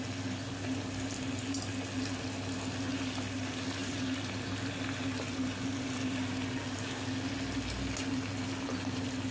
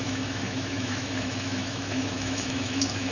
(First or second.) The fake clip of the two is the second